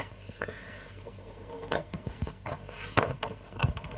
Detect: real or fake fake